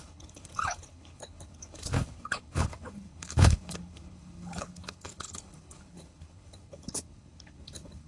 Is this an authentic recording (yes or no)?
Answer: no